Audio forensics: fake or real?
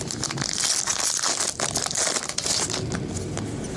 real